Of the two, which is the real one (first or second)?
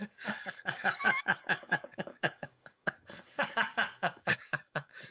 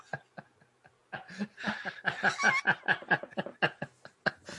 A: second